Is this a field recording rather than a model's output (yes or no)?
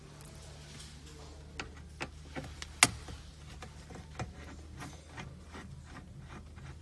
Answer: yes